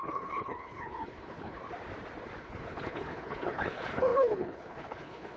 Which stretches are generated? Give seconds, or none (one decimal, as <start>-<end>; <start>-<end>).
0.0-1.6; 2.4-5.4